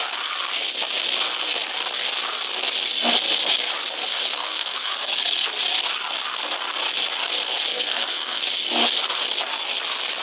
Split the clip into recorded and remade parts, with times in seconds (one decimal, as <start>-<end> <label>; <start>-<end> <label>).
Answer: 0.0-4.1 recorded; 4.1-4.9 remade; 4.9-7.7 recorded; 7.7-8.4 remade; 8.4-10.2 recorded